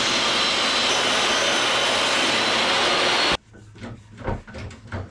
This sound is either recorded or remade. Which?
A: recorded